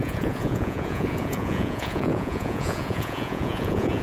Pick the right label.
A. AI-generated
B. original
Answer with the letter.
A